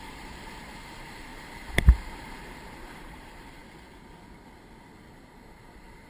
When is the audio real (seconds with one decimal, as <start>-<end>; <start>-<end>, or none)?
3.6-5.1